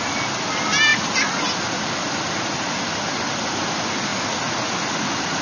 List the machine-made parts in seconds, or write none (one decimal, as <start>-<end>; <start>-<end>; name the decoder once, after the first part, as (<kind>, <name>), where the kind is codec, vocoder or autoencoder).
none